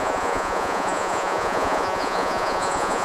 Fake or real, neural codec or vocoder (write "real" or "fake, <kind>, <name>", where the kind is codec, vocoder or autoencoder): fake, vocoder, Vocos